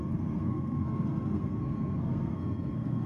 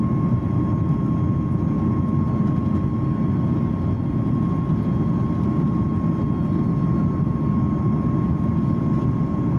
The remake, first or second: first